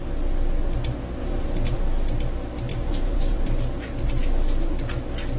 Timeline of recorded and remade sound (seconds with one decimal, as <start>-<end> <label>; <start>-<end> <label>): 0.0-1.2 recorded; 1.2-1.8 remade; 1.8-2.7 recorded; 2.7-3.6 remade; 3.6-5.4 recorded